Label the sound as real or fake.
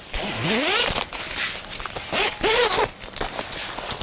real